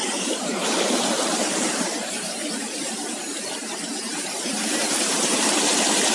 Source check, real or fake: fake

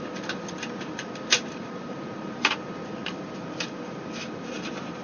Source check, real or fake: fake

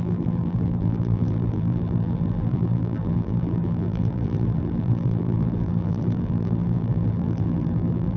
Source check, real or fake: fake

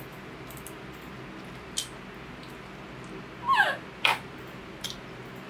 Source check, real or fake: real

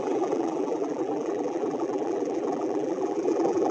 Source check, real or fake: fake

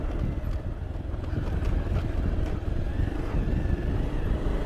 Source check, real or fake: real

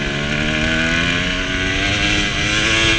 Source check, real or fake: real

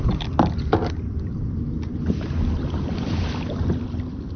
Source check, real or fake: fake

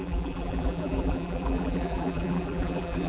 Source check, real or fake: fake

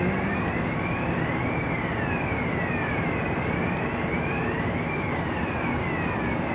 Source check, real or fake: real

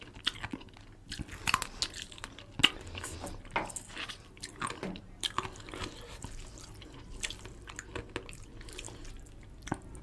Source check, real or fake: real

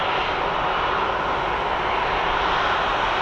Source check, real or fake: real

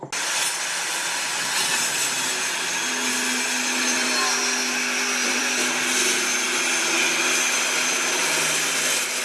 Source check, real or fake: real